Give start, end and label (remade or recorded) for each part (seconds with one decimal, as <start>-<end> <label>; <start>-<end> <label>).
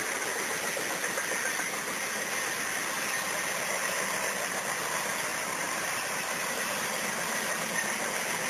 0.0-5.3 recorded; 5.3-7.5 remade; 7.5-8.5 recorded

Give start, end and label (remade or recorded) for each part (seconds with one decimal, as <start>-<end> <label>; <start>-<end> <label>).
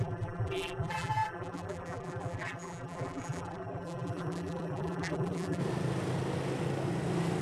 0.0-5.6 remade; 5.6-7.4 recorded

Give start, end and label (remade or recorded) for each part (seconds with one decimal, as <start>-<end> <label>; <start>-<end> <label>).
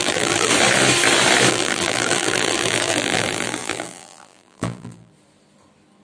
0.0-0.5 remade; 0.5-1.5 recorded; 1.5-5.1 remade; 5.1-6.0 recorded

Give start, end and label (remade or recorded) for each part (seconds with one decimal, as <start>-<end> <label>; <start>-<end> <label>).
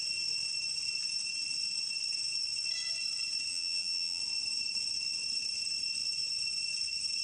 0.0-3.5 recorded; 3.5-4.2 remade; 4.2-7.2 recorded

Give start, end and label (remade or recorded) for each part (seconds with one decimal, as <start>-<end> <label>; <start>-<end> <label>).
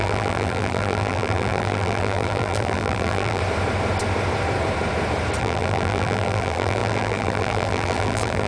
0.0-3.4 remade; 3.4-5.4 recorded; 5.4-8.5 remade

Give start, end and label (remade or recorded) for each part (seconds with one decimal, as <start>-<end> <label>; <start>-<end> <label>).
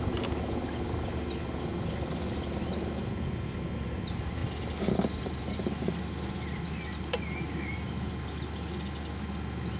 0.0-9.8 recorded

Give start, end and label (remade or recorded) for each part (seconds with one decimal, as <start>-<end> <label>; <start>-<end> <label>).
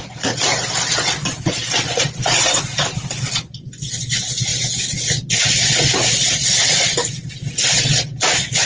0.0-1.2 recorded; 1.2-3.3 remade; 3.3-8.7 recorded